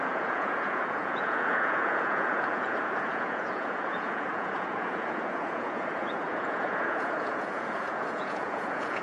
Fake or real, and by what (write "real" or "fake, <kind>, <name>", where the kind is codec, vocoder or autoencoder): fake, vocoder, Vocos